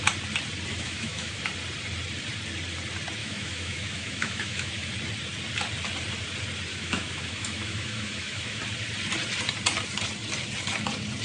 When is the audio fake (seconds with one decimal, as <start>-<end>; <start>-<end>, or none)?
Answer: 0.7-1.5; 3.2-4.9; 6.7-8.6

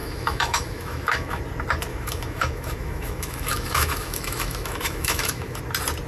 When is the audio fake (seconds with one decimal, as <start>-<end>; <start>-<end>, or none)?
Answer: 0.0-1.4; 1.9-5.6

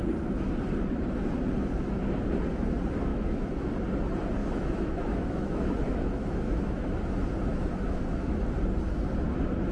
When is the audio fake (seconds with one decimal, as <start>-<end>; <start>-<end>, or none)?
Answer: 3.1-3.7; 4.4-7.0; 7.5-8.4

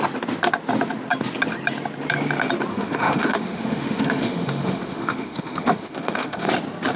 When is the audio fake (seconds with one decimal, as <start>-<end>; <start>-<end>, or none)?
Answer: 2.7-6.5